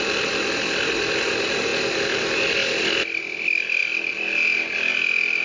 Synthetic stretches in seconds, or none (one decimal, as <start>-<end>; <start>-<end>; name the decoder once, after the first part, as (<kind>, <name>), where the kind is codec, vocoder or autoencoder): none